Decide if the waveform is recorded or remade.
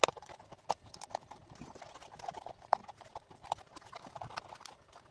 recorded